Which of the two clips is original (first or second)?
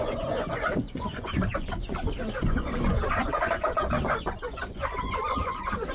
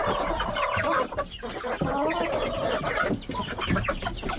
second